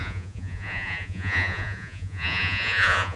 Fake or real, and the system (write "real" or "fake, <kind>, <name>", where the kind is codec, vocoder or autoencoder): fake, vocoder, Vocos